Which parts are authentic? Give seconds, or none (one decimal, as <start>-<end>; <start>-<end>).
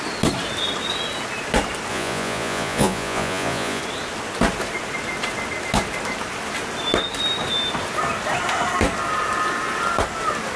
0.0-1.9; 3.8-10.6